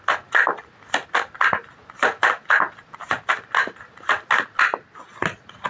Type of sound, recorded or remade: recorded